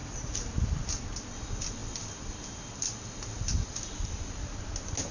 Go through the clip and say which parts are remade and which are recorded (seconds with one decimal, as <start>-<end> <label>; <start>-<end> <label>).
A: 0.0-0.9 remade; 0.9-5.1 recorded